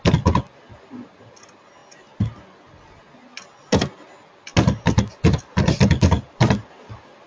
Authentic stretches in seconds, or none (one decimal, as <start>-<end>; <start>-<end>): 0.0-7.3

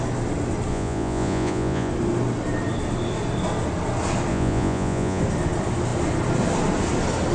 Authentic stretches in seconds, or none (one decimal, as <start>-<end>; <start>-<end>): 0.0-0.7; 1.9-4.3; 5.2-7.3